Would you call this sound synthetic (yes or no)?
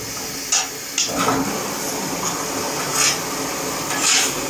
no